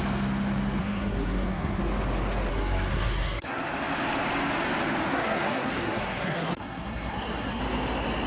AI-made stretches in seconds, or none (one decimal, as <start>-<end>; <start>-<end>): 0.8-1.8; 2.5-3.6; 5.1-7.6

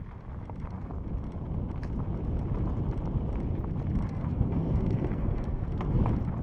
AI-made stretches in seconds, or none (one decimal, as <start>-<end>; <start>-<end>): 4.1-6.0

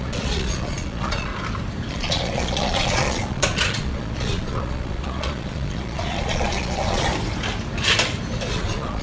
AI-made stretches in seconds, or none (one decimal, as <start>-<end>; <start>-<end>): 0.0-1.3; 1.9-7.1; 8.5-9.0

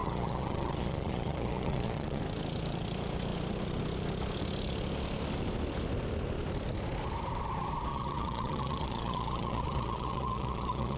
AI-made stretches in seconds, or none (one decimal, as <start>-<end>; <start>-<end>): 0.0-2.2; 7.9-11.0

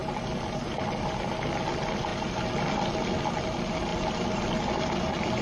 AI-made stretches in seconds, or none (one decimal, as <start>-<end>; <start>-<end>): none

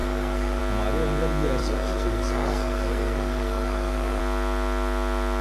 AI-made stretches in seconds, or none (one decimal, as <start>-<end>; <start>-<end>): 0.0-0.6; 1.6-4.2